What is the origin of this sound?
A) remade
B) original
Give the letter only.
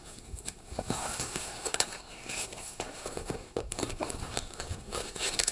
A